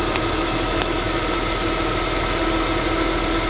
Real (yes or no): yes